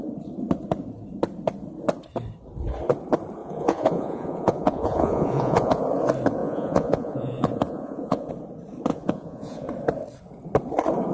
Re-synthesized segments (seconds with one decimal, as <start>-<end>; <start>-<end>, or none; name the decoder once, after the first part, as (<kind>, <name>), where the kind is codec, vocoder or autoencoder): 3.4-5.8 (vocoder, Vocos); 6.4-8.3; 8.9-9.7